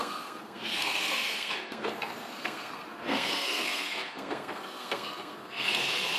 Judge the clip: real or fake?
fake